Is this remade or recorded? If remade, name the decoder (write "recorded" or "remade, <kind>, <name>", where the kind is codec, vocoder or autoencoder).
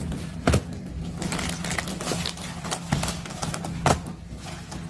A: recorded